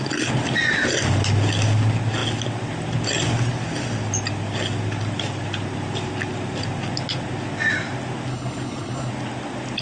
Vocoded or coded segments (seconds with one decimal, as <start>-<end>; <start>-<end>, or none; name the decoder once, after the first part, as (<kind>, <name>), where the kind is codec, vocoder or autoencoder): 8.3-9.1 (codec, HILCodec)